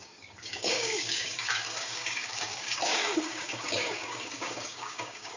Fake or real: fake